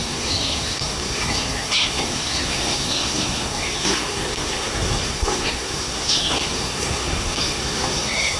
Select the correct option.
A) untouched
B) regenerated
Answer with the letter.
B